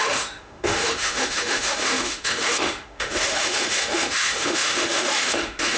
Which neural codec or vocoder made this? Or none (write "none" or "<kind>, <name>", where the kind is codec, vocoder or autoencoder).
autoencoder, DAC-VAE